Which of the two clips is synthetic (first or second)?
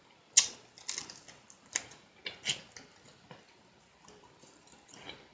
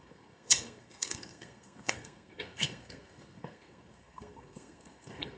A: second